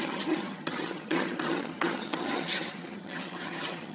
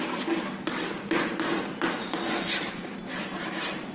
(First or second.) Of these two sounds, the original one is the second